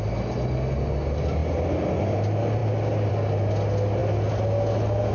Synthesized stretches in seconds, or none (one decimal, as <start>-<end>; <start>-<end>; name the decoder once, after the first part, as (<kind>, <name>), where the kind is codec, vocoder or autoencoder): none